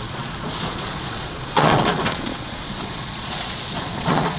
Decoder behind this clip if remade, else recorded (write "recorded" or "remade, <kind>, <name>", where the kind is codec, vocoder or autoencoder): remade, vocoder, Vocos